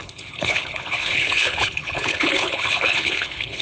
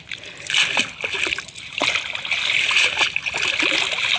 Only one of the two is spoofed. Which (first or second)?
first